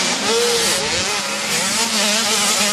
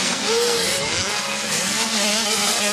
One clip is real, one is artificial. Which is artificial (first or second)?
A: second